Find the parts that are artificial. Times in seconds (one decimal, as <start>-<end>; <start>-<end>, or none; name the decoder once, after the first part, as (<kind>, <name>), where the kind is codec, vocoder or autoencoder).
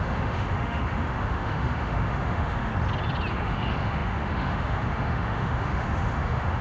0.0-2.7 (autoencoder, DAC-VAE); 3.3-6.6